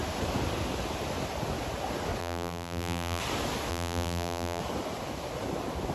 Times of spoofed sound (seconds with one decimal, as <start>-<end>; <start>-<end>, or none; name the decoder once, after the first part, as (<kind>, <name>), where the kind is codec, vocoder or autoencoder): 2.2-3.2 (vocoder, BigVGAN v2); 3.7-4.6